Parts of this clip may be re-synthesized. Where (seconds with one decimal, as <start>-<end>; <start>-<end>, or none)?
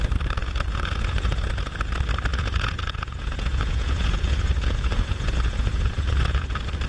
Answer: 0.4-1.5; 2.3-6.4